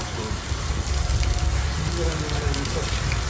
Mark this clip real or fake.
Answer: fake